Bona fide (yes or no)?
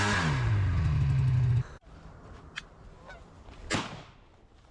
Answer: yes